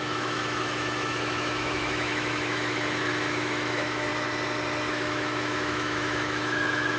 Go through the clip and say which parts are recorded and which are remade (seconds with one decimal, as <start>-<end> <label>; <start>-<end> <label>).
0.0-4.1 remade; 4.1-4.9 recorded; 4.9-7.0 remade

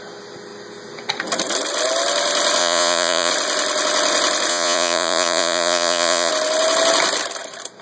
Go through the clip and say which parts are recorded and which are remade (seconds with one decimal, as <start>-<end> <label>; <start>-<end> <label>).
0.0-2.6 recorded; 2.6-3.3 remade; 3.3-4.5 recorded; 4.5-6.3 remade; 6.3-7.8 recorded

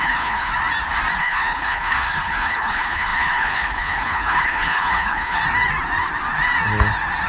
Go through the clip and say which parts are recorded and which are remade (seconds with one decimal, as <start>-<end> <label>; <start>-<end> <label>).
0.0-0.5 remade; 0.5-1.2 recorded; 1.2-5.4 remade; 5.4-7.3 recorded